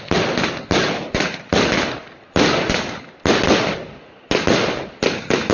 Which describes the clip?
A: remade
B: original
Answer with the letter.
B